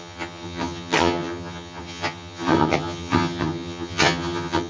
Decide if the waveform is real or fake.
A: fake